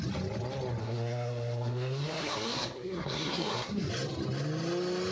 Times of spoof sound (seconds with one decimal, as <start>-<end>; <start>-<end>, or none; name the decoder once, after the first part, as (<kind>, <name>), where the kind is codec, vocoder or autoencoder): 0.8-3.9 (codec, SNAC)